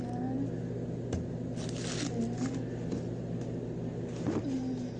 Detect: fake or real real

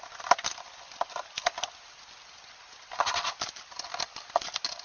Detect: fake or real real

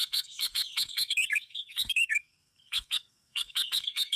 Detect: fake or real fake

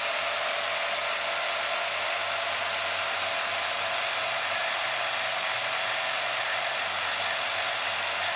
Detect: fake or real real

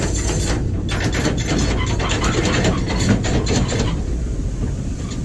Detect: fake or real real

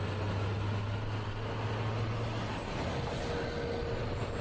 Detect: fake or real real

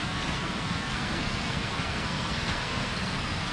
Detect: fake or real fake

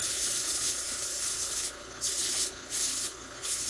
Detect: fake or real fake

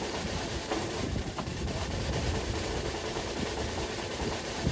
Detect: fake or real fake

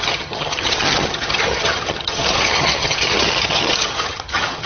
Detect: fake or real fake